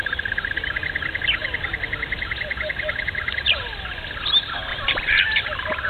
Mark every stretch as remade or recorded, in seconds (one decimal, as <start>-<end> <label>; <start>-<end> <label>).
0.0-4.7 recorded; 4.7-5.2 remade; 5.2-5.9 recorded